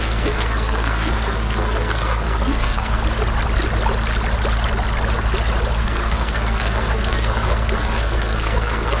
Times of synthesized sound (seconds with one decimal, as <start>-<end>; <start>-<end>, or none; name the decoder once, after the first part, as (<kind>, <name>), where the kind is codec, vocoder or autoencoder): 0.0-3.0 (codec, SNAC); 5.8-9.0